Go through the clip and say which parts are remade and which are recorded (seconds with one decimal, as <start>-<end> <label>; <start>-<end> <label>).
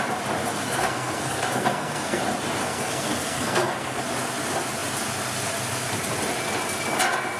0.0-0.5 recorded; 0.5-2.2 remade; 2.2-2.6 recorded; 2.6-4.0 remade; 4.0-7.4 recorded